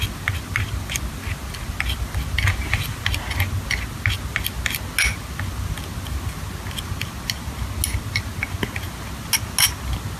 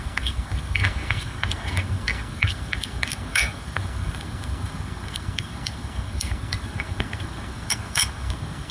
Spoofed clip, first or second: second